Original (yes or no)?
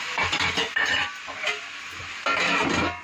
yes